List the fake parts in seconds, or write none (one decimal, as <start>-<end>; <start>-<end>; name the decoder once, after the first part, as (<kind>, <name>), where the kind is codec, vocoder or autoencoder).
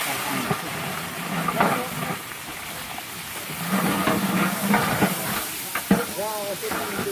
4.2-4.7 (codec, DAC)